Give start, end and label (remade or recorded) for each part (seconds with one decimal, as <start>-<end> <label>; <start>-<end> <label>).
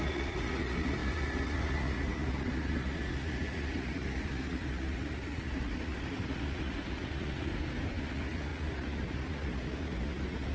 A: 0.0-7.5 remade; 7.5-8.0 recorded; 8.0-10.5 remade